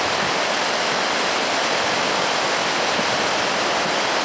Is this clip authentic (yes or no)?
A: yes